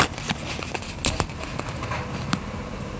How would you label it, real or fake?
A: real